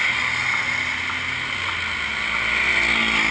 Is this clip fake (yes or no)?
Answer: no